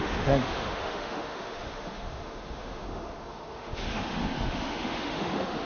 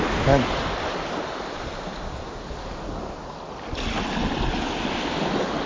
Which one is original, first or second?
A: second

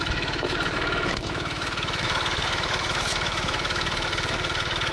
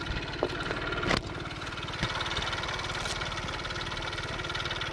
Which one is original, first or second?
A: second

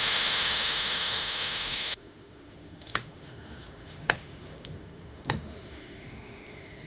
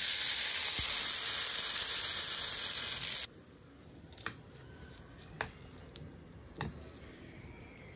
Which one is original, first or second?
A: second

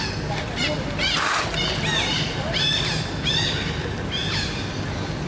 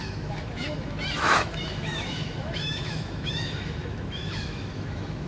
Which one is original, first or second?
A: first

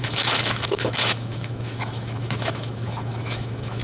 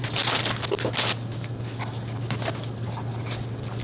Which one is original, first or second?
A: second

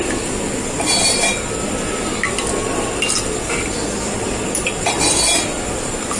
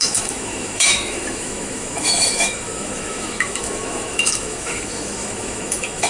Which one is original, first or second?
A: first